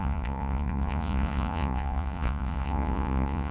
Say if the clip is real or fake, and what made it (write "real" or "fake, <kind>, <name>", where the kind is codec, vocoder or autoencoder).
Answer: fake, vocoder, Vocos